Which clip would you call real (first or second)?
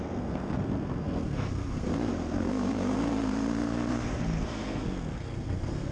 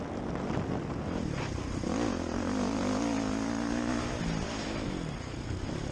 second